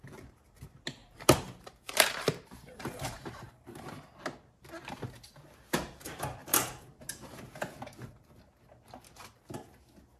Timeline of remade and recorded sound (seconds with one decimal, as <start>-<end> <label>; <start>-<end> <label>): 0.0-1.0 recorded; 1.0-3.8 remade; 3.8-6.5 recorded; 6.5-7.0 remade; 7.0-10.2 recorded